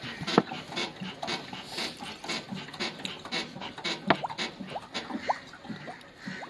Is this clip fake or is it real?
real